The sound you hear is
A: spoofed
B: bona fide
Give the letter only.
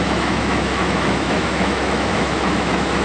A